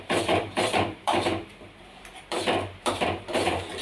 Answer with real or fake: fake